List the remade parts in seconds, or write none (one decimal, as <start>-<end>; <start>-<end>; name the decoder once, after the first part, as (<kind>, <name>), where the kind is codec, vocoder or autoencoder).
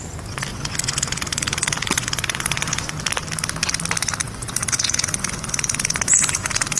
0.5-2.9 (vocoder, Vocos); 4.2-6.8